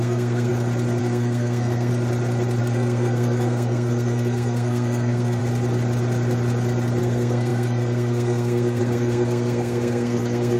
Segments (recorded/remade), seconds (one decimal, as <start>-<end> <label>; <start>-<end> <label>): 0.0-0.5 remade; 0.5-1.0 recorded; 1.0-1.9 remade; 1.9-2.6 recorded; 2.6-5.4 remade; 5.4-7.0 recorded; 7.0-10.6 remade